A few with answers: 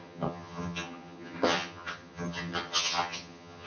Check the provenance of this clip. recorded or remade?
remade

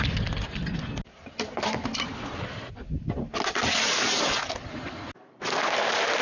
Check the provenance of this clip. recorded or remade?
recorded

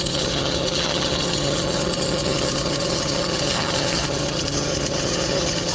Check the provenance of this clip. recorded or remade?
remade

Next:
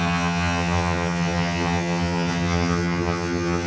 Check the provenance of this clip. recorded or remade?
remade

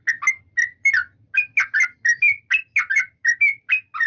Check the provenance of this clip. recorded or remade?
recorded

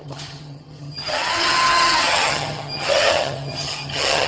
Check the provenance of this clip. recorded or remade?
remade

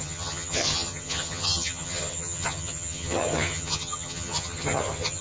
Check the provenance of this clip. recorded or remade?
remade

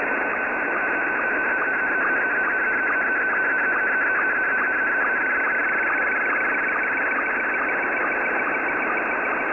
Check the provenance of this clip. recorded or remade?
recorded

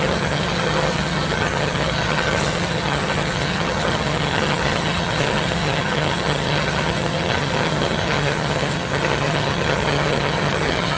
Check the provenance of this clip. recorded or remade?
remade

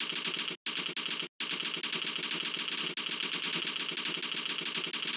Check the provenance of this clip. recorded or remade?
recorded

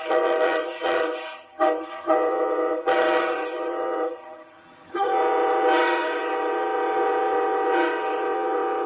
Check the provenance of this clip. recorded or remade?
remade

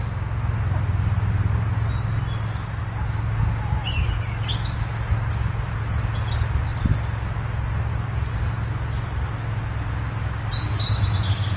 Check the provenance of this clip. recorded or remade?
recorded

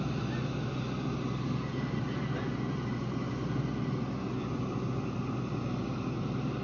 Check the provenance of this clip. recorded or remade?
recorded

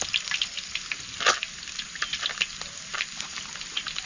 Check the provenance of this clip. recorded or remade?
recorded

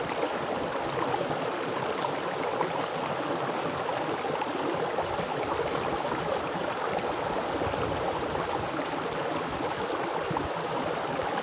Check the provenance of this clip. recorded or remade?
recorded